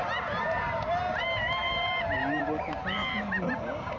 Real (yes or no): no